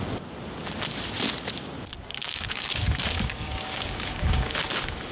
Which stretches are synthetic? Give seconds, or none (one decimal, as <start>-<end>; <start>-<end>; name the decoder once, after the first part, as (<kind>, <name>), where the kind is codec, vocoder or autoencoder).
2.1-4.5 (codec, DAC)